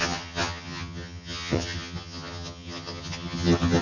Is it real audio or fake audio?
fake